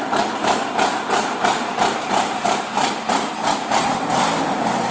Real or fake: fake